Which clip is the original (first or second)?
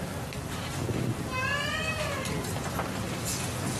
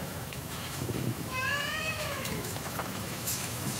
first